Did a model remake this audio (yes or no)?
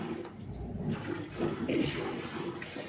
no